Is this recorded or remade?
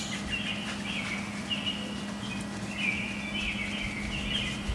recorded